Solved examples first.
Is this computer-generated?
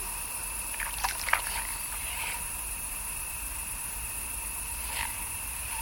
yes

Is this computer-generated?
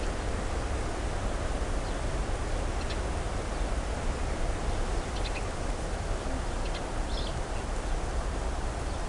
no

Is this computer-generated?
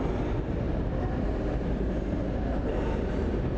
no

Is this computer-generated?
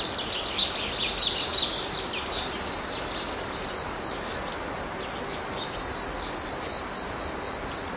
no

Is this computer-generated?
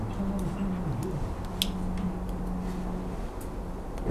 no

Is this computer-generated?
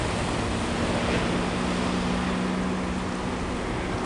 no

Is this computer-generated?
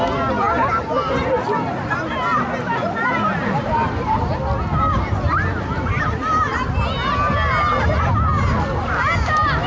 no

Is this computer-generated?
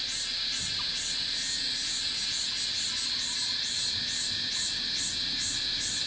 no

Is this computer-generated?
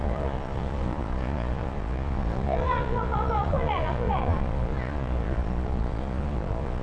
yes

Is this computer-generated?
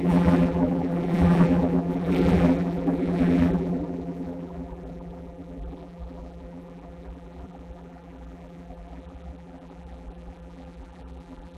yes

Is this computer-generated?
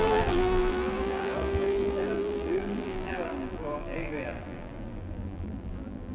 yes